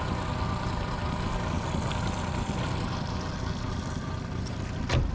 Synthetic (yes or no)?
no